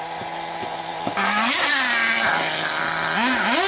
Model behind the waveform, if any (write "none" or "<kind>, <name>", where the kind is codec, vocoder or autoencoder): none